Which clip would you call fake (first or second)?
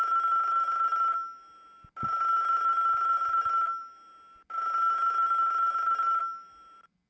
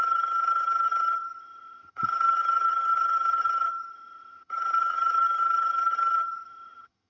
second